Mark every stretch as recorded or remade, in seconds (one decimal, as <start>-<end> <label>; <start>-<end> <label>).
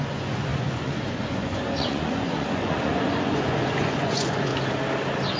0.0-4.5 remade; 4.5-5.4 recorded